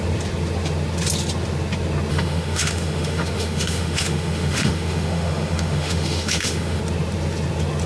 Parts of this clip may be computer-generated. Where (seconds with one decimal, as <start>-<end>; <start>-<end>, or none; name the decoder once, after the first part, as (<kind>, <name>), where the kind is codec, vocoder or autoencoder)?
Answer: 2.1-6.8 (autoencoder, DAC-VAE)